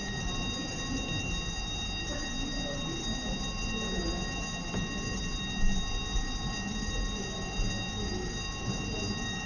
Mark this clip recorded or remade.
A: recorded